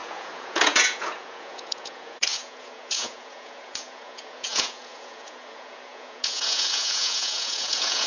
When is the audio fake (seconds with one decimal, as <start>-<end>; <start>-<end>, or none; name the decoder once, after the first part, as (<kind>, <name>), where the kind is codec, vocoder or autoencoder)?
0.0-8.1 (vocoder, Vocos)